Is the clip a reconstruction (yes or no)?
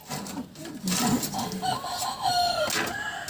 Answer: no